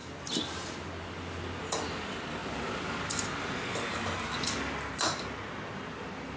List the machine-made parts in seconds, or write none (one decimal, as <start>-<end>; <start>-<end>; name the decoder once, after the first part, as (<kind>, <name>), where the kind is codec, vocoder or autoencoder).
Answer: none